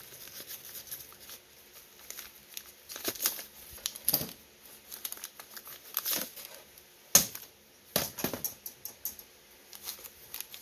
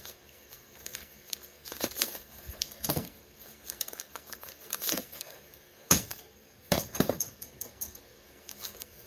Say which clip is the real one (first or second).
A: first